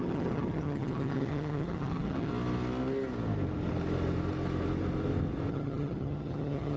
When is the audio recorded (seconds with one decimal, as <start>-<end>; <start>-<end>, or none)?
2.3-5.5